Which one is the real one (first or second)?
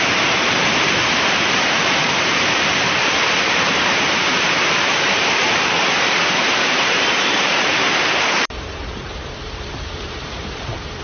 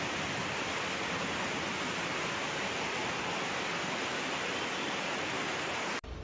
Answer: second